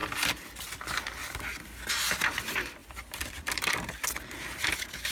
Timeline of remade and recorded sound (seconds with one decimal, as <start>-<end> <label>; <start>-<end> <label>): 0.0-0.6 remade; 0.6-1.2 recorded; 1.2-1.9 remade; 1.9-2.8 recorded; 2.8-3.7 remade; 3.7-5.1 recorded